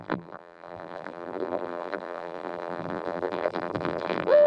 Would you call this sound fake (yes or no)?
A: yes